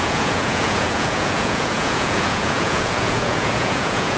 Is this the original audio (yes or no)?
no